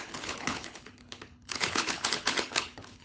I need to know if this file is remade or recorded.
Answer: remade